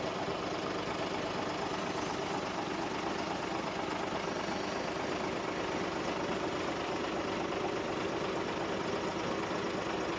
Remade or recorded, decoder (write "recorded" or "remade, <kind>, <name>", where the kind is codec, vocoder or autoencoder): recorded